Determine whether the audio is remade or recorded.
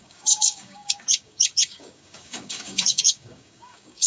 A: remade